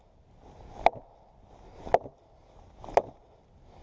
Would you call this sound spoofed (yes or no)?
no